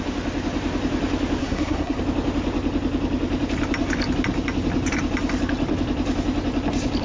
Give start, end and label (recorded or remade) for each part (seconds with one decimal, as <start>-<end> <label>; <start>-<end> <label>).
0.0-1.4 recorded; 1.4-2.0 remade; 2.0-7.0 recorded